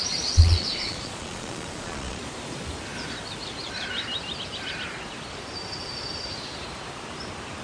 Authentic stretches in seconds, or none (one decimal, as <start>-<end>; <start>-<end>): 2.2-7.6